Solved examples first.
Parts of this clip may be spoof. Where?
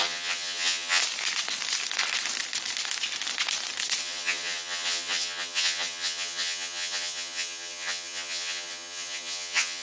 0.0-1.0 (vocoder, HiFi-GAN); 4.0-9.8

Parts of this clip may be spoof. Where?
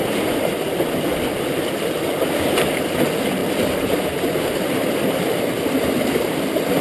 0.0-3.4 (vocoder, BigVGAN v2); 4.5-6.8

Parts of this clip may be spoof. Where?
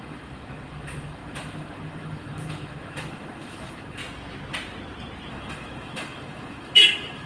0.0-4.0 (autoencoder, DAC-VAE); 5.3-7.3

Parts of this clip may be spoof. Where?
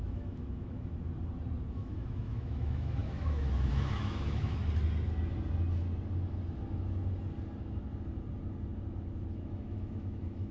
0.0-0.9 (autoencoder, DAC-VAE); 1.7-4.6; 9.3-10.5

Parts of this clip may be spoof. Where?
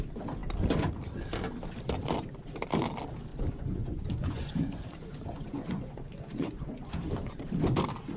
3.3-7.4 (vocoder, Vocos)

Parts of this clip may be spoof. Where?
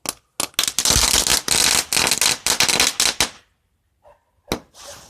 none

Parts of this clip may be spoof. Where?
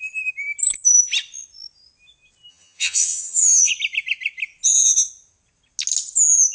2.5-3.7 (vocoder, HiFi-GAN)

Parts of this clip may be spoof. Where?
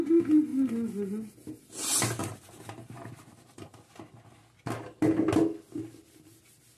2.2-3.9 (vocoder, BigVGAN v2)